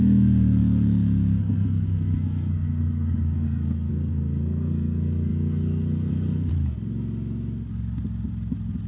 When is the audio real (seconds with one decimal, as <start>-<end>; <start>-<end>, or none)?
6.5-8.9